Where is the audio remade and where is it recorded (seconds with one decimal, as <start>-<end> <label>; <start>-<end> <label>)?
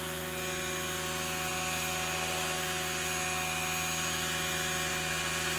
0.0-5.6 recorded